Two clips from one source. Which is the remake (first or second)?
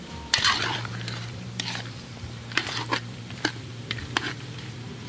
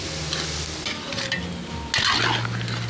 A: first